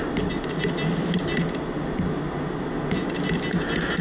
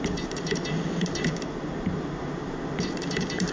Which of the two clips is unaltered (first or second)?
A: first